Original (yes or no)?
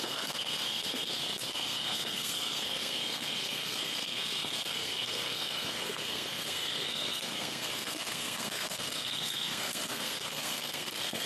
no